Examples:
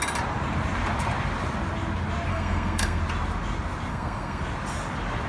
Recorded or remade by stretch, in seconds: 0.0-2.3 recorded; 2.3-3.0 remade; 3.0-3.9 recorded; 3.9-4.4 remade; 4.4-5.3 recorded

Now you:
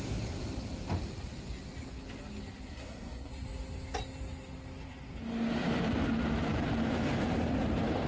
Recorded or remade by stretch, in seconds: 0.0-2.7 recorded; 2.7-3.3 remade; 3.3-8.1 recorded